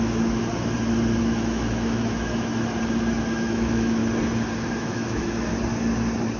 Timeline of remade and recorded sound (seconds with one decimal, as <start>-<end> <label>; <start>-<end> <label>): 0.0-0.4 remade; 0.4-1.2 recorded; 1.2-2.5 remade; 2.5-3.2 recorded; 3.2-4.0 remade; 4.0-4.7 recorded; 4.7-5.5 remade; 5.5-6.4 recorded